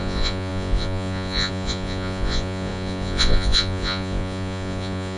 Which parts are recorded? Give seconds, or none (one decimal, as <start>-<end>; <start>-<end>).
none